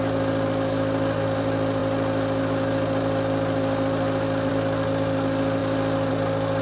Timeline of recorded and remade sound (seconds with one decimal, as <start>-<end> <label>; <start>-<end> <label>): 0.0-6.6 recorded